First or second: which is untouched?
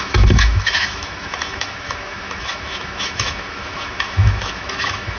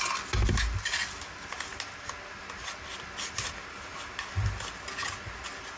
second